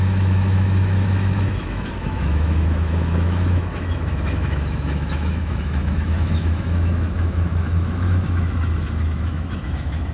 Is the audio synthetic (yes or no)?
yes